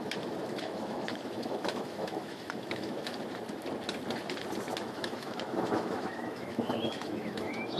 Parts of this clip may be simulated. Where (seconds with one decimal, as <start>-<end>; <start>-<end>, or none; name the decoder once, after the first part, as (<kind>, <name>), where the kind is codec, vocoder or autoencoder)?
0.0-3.2 (autoencoder, DAC-VAE); 4.8-7.8